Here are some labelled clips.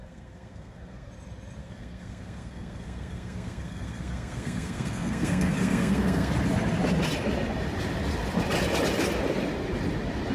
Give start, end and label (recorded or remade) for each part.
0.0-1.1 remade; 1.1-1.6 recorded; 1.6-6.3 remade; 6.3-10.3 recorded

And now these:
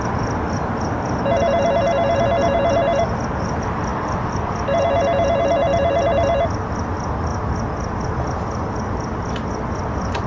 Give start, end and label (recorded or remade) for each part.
0.0-10.3 recorded

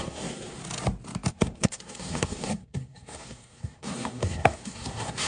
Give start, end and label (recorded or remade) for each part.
0.0-0.6 remade; 0.6-1.3 recorded; 1.3-5.3 remade

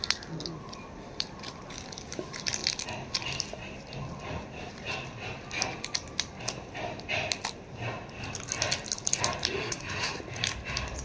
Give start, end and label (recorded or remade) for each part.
0.0-9.6 recorded; 9.6-10.2 remade; 10.2-11.0 recorded